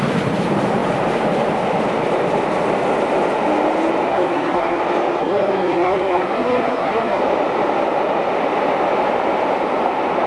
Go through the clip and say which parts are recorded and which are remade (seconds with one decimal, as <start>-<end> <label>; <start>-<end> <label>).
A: 0.0-4.1 recorded; 4.1-4.8 remade; 4.8-5.2 recorded; 5.2-7.2 remade; 7.2-10.3 recorded